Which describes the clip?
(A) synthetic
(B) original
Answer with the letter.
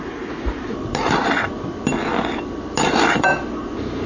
B